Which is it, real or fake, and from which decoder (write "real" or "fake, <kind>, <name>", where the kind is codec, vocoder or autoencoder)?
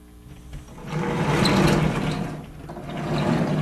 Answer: real